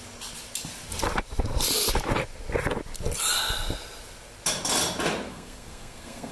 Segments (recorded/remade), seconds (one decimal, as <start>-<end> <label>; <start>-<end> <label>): 0.0-5.3 recorded; 5.3-6.3 remade